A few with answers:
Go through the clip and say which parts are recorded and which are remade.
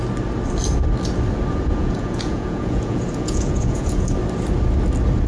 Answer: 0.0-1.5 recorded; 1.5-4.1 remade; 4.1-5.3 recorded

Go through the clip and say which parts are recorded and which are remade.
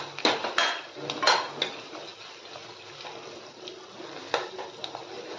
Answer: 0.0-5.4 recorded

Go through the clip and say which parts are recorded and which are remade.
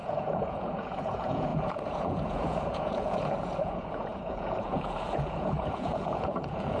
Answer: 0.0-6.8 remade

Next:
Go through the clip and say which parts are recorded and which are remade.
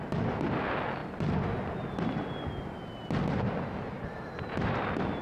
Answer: 0.0-1.0 recorded; 1.0-1.7 remade; 1.7-5.2 recorded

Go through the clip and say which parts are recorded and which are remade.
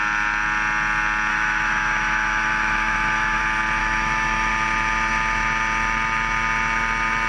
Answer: 0.0-1.3 recorded; 1.3-3.4 remade; 3.4-3.8 recorded; 3.8-4.5 remade; 4.5-7.3 recorded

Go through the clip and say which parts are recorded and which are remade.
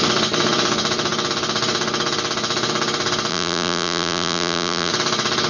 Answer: 0.0-3.3 recorded; 3.3-4.9 remade; 4.9-5.5 recorded